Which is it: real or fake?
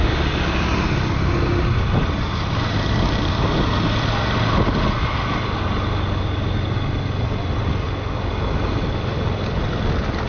real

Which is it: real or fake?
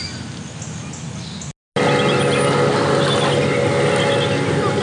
real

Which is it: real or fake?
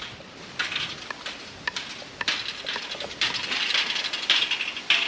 real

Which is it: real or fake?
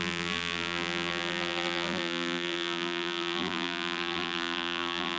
fake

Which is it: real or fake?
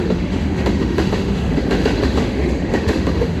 fake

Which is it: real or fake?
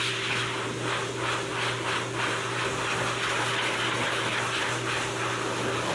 real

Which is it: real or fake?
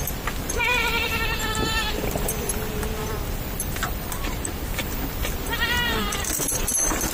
fake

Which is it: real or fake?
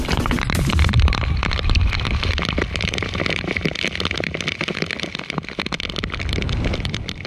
fake